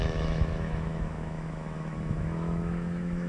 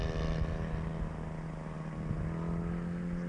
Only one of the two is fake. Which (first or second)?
first